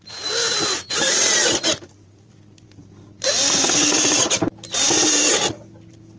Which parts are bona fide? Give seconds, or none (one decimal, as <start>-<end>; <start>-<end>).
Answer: 0.0-6.2